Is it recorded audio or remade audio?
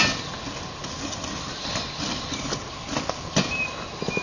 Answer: recorded